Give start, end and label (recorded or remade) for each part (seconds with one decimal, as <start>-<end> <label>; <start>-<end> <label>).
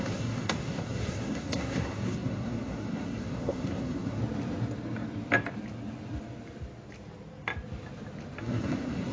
0.0-4.2 remade; 4.2-8.4 recorded; 8.4-9.1 remade